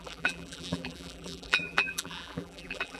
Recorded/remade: remade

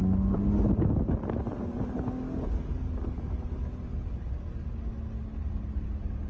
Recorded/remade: recorded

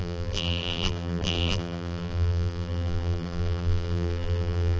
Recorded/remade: remade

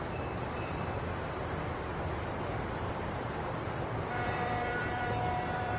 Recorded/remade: remade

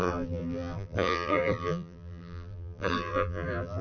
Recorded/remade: remade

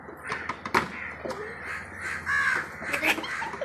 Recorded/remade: recorded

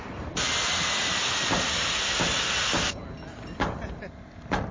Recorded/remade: remade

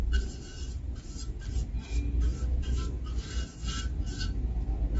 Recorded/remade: recorded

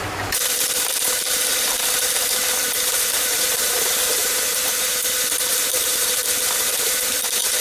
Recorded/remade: remade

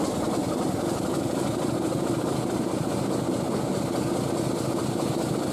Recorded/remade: recorded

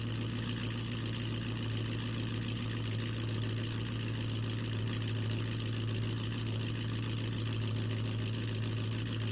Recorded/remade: recorded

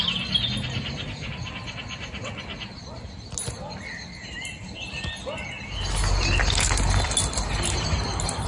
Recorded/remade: recorded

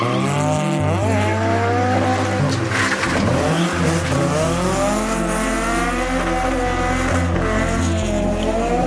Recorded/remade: recorded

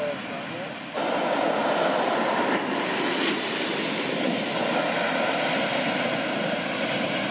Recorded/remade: recorded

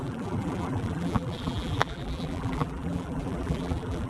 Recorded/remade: remade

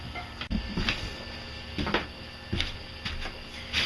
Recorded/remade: recorded